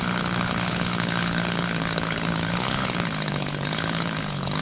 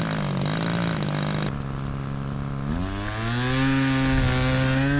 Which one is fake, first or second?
first